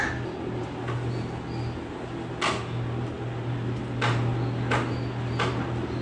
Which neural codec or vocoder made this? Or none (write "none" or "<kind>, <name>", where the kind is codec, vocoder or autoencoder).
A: none